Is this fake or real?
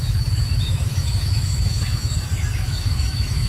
fake